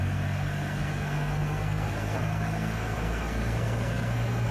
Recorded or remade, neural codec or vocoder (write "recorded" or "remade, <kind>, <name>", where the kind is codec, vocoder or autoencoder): remade, codec, SNAC